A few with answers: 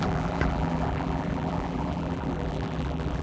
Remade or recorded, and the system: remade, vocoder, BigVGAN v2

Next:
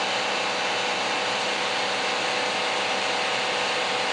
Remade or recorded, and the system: recorded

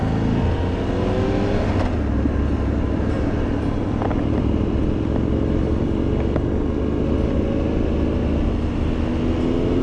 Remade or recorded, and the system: recorded